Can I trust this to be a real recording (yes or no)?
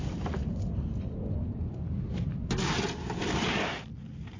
yes